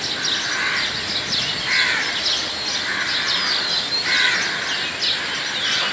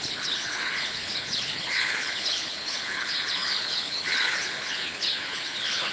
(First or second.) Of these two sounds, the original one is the first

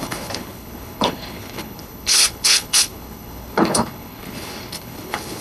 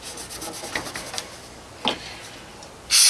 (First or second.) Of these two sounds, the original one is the second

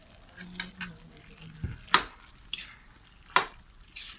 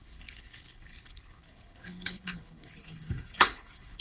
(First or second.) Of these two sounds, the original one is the first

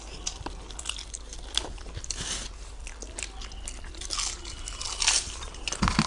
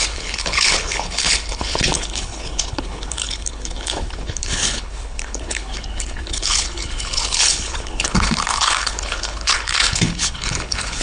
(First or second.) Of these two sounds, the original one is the first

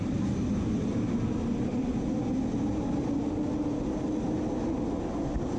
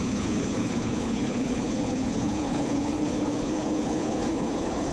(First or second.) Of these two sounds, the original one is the first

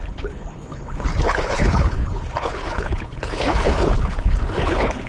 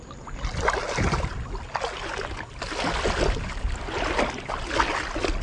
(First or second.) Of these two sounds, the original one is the second